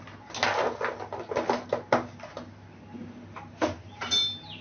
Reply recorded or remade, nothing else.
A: recorded